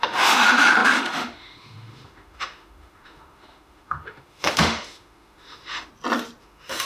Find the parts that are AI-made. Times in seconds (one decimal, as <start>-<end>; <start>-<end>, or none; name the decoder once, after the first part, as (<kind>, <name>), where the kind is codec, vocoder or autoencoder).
0.0-5.9 (autoencoder, DAC-VAE); 6.4-6.9